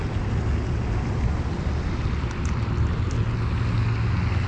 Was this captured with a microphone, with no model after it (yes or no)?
yes